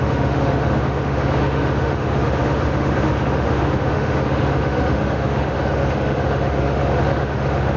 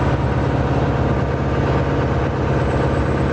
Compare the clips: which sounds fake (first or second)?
first